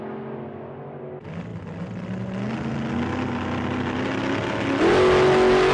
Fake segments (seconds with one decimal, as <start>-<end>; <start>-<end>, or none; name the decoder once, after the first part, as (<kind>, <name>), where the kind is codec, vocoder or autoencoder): none